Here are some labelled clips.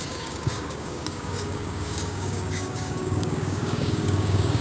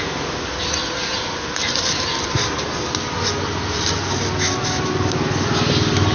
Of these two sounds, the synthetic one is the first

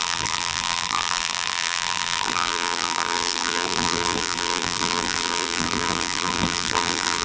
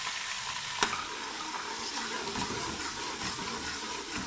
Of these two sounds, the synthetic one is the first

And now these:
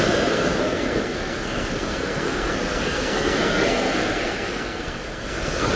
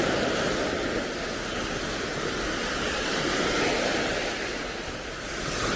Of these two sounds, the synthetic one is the first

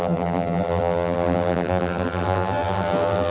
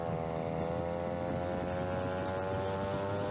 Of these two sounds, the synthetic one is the first